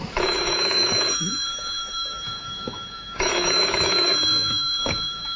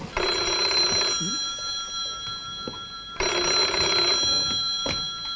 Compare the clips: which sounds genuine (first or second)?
second